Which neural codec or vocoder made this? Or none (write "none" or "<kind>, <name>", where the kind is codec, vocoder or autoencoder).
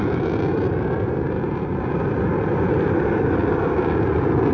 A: none